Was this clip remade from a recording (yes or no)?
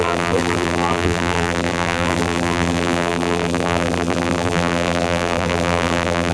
yes